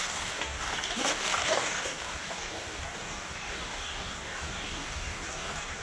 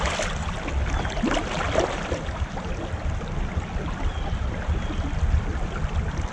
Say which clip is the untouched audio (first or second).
second